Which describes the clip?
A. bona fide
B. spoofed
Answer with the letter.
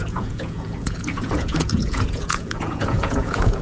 B